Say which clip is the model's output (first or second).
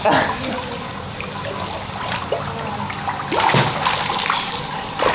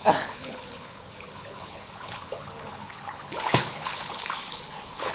second